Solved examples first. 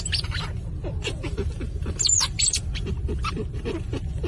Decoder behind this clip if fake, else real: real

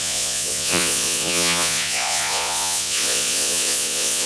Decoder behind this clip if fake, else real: fake, vocoder, Vocos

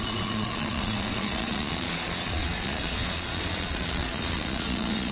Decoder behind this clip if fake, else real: fake, vocoder, Vocos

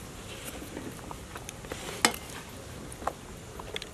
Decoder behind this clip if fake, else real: real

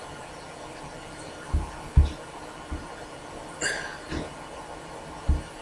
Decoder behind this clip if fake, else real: real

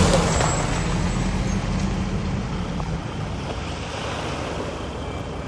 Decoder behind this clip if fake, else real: real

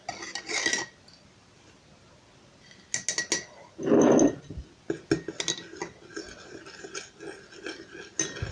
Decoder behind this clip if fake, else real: real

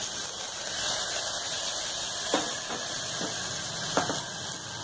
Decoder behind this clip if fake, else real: real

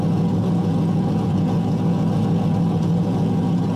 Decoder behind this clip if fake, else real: fake, vocoder, Vocos